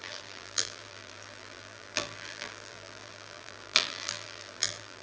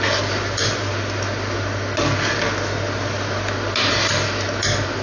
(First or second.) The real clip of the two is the second